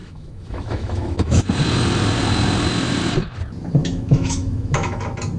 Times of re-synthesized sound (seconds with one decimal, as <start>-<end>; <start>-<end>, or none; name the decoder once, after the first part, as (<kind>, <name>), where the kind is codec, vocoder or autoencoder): 0.0-1.4 (autoencoder, DAC-VAE); 3.8-5.0